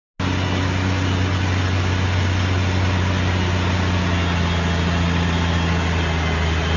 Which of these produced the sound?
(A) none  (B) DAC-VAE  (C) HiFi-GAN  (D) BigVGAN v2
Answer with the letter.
A